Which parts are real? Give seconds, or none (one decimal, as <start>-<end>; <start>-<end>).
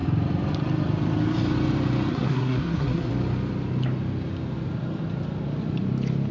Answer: 0.0-2.1; 3.1-6.3